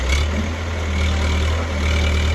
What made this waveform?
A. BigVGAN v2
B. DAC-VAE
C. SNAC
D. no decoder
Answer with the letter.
D